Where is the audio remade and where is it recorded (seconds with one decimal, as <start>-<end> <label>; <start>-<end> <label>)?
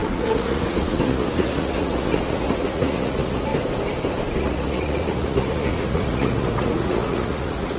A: 0.0-3.5 remade; 3.5-4.4 recorded; 4.4-7.8 remade